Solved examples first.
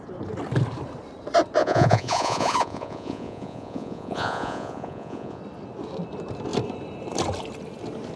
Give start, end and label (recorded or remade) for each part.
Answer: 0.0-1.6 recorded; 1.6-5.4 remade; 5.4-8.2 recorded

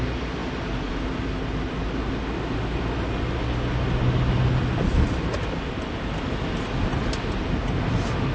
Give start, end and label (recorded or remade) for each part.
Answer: 0.0-8.3 recorded

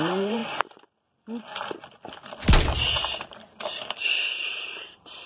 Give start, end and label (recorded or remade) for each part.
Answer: 0.0-0.4 remade; 0.4-3.6 recorded; 3.6-5.3 remade

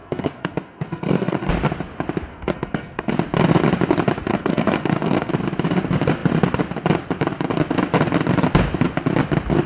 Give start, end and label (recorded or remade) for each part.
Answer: 0.0-1.5 remade; 1.5-2.3 recorded; 2.3-3.1 remade; 3.1-4.3 recorded; 4.3-5.3 remade; 5.3-9.7 recorded

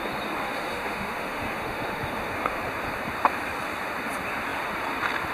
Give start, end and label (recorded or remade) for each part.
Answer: 0.0-0.4 recorded; 0.4-2.6 remade; 2.6-5.3 recorded

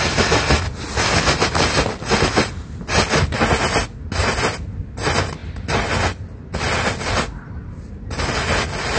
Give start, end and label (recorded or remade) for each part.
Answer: 0.0-9.0 recorded